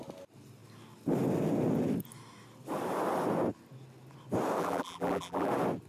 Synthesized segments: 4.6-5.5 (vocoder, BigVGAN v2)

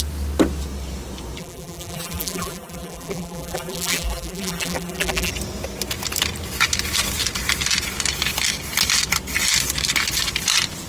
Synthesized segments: 1.4-5.3 (vocoder, BigVGAN v2)

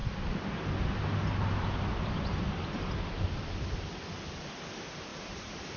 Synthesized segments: 5.1-5.8 (vocoder, BigVGAN v2)

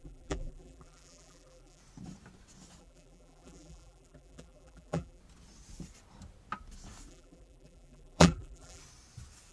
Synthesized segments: 0.0-1.8 (vocoder, BigVGAN v2); 2.8-5.2; 7.1-8.8

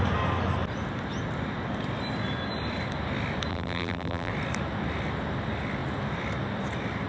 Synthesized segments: 3.5-4.3 (vocoder, BigVGAN v2)

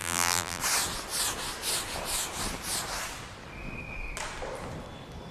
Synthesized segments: 0.0-0.6 (vocoder, BigVGAN v2)